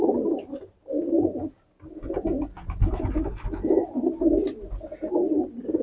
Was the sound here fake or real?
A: real